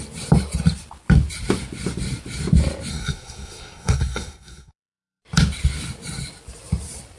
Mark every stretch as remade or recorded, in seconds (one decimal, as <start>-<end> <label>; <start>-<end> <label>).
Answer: 0.0-2.9 recorded; 2.9-5.2 remade; 5.2-7.2 recorded